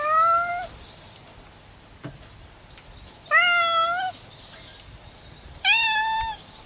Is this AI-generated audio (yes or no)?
no